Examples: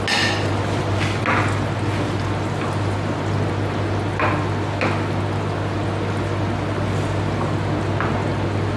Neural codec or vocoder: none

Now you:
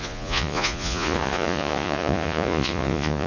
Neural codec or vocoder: vocoder, Vocos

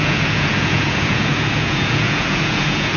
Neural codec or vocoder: vocoder, Vocos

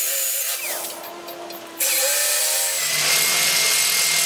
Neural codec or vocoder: none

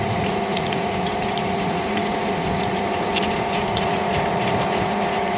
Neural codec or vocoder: vocoder, Vocos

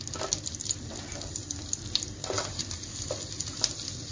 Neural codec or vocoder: none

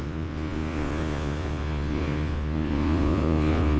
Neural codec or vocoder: vocoder, Vocos